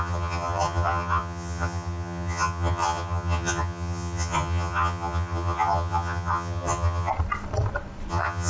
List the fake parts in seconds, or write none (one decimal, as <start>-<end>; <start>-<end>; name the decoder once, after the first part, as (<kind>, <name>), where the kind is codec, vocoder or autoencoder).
0.0-7.1 (vocoder, HiFi-GAN); 8.1-8.5